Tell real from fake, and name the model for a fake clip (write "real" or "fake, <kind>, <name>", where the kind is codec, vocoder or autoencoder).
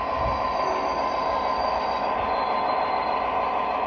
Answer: real